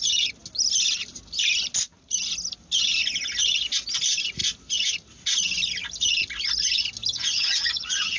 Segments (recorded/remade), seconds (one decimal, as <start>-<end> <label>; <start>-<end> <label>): 0.0-7.1 recorded; 7.1-8.2 remade

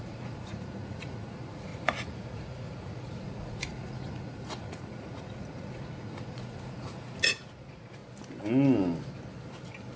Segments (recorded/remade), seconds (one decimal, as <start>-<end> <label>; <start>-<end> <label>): 0.0-8.0 remade; 8.0-10.0 recorded